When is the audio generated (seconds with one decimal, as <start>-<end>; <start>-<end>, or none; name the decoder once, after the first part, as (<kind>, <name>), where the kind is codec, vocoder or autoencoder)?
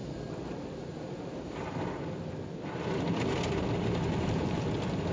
none